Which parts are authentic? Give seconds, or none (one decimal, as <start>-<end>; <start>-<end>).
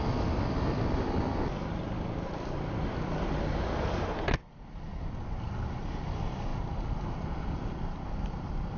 0.0-6.5